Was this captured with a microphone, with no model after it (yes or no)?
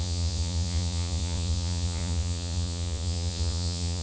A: no